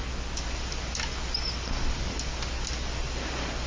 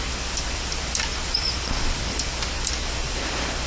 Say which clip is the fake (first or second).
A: second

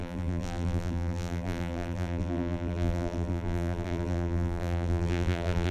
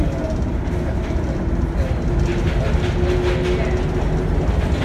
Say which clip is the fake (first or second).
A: first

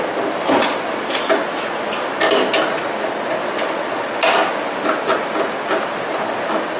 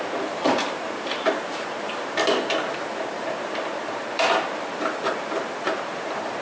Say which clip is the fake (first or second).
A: second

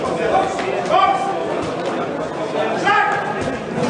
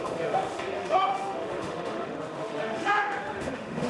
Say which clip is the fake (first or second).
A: second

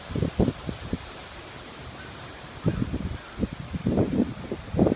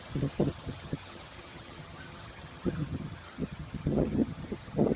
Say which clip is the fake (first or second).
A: second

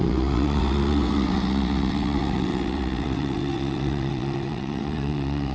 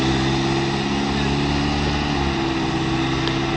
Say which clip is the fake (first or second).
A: first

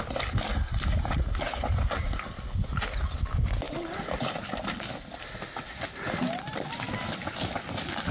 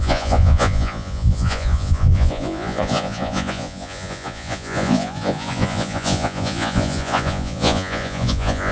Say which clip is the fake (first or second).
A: second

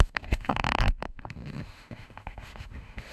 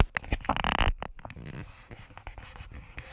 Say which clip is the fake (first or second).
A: first